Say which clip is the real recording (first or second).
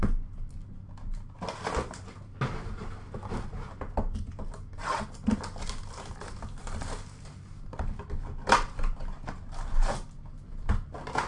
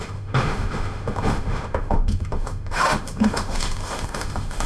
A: first